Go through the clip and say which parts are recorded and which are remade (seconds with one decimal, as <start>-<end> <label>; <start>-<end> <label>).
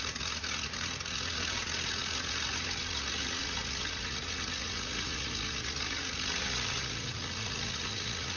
0.0-8.4 remade